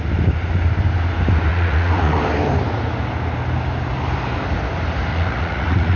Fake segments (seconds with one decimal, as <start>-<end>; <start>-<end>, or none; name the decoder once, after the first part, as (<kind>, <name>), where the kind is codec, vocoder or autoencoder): 1.5-2.2 (vocoder, Vocos); 5.1-6.0